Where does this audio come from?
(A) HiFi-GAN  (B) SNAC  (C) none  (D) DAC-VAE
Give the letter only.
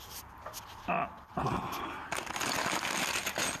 C